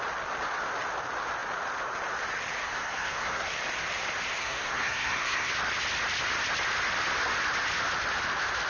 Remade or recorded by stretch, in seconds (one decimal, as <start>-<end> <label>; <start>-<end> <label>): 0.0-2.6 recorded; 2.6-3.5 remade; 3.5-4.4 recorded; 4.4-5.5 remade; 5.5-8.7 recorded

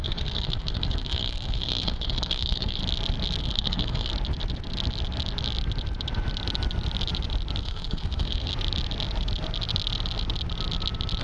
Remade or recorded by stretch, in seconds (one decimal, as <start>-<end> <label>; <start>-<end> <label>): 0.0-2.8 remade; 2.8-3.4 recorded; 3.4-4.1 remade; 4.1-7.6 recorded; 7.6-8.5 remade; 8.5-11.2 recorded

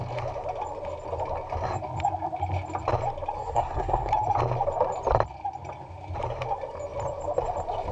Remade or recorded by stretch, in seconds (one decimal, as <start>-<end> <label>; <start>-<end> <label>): 0.0-3.4 recorded; 3.4-4.1 remade; 4.1-7.9 recorded

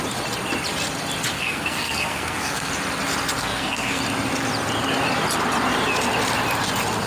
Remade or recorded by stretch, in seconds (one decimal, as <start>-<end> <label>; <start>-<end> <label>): 0.0-1.3 recorded; 1.3-2.7 remade; 2.7-3.4 recorded; 3.4-4.0 remade; 4.0-7.1 recorded